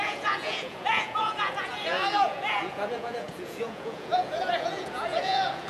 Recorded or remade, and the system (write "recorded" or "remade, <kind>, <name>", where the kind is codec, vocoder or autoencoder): remade, vocoder, Vocos